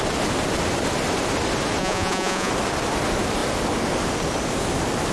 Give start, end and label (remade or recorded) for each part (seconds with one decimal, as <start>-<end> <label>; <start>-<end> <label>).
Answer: 0.0-1.8 recorded; 1.8-2.5 remade; 2.5-5.1 recorded

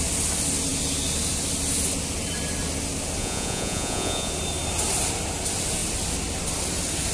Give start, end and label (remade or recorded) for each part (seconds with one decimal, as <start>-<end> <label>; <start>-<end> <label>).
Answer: 0.0-3.2 recorded; 3.2-4.3 remade; 4.3-7.1 recorded

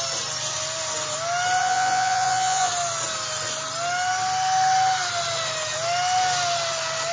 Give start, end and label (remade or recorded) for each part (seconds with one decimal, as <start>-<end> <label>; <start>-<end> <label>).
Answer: 0.0-1.6 recorded; 1.6-2.7 remade; 2.7-7.1 recorded

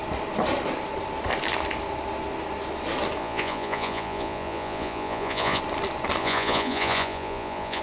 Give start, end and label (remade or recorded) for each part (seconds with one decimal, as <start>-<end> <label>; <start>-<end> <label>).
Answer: 0.0-3.2 recorded; 3.2-5.6 remade; 5.6-6.2 recorded; 6.2-7.8 remade